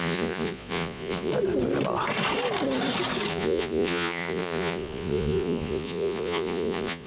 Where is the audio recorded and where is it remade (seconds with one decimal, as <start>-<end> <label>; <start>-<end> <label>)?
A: 0.0-1.3 remade; 1.3-3.3 recorded; 3.3-7.1 remade